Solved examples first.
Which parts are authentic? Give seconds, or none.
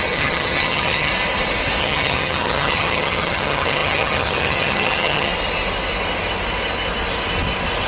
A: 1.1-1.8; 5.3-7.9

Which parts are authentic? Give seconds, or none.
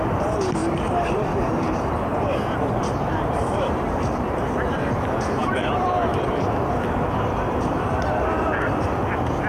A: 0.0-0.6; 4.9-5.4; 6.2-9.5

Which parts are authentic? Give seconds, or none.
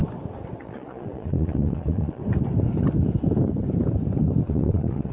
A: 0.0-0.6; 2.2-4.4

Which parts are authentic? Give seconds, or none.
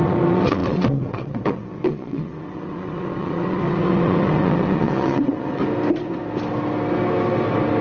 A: 5.6-7.8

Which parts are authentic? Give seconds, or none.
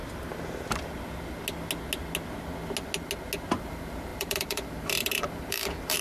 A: 0.0-3.6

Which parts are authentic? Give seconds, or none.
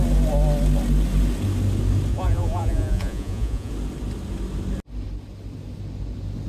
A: 0.0-2.1; 3.7-6.5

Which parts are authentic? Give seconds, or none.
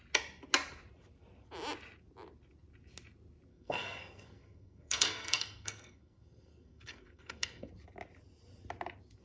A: 0.0-3.5; 7.7-9.2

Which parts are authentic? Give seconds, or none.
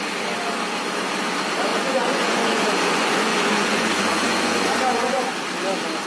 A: 0.0-1.7; 5.3-6.1